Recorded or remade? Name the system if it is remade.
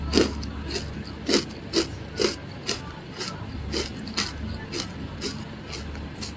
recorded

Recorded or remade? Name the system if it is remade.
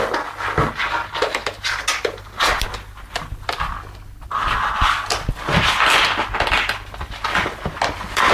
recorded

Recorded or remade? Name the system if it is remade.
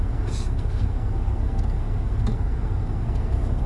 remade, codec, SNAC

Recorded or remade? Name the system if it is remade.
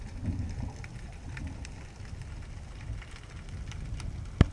recorded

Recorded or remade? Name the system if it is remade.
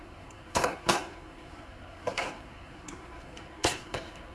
remade, codec, SNAC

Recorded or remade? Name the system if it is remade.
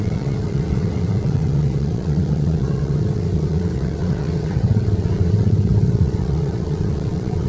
remade, vocoder, WaveNeXt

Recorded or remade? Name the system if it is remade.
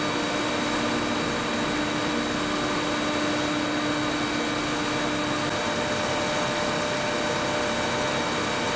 recorded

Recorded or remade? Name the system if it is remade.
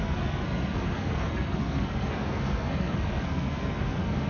remade, codec, SNAC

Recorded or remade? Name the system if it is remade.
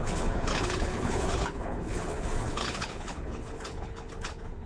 remade, codec, HILCodec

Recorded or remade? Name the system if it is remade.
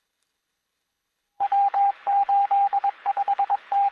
remade, codec, HILCodec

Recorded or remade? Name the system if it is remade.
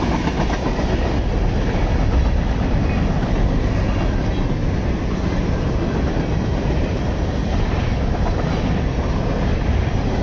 recorded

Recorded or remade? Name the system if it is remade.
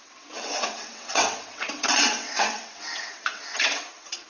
remade, vocoder, WaveNeXt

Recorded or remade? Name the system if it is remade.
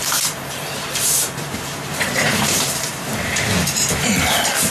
remade, vocoder, BigVGAN v2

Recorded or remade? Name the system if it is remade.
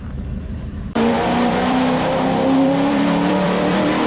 remade, vocoder, BigVGAN v2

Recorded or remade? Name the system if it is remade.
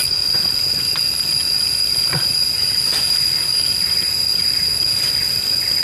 recorded